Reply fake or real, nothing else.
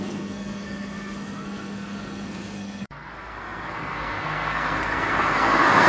fake